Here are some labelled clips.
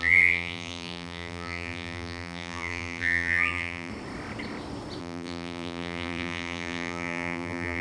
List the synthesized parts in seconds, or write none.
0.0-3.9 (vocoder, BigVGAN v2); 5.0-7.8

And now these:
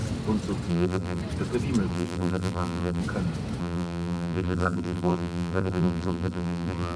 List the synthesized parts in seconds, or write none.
0.7-1.2 (vocoder, BigVGAN v2); 1.9-3.0; 3.6-7.0

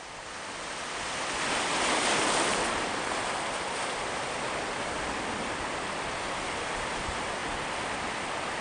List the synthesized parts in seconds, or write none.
7.4-7.9 (vocoder, BigVGAN v2)

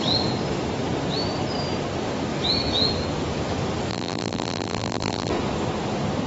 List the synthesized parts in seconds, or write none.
3.9-5.3 (vocoder, BigVGAN v2)

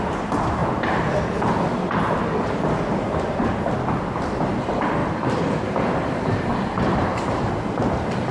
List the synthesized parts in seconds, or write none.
0.6-1.5 (vocoder, BigVGAN v2); 5.0-7.5

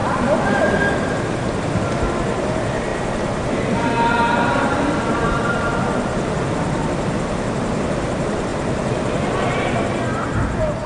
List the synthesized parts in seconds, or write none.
none